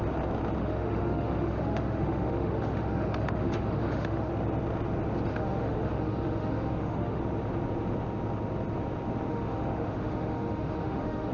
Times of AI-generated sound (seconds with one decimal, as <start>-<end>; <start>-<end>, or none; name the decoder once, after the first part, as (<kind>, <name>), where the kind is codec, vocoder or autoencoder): 0.6-4.3 (autoencoder, DAC-VAE); 5.3-7.2; 9.3-11.3